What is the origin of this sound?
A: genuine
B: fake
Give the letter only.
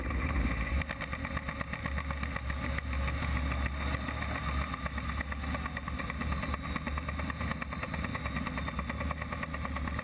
A